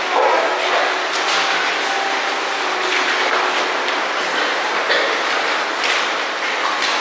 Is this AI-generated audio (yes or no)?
no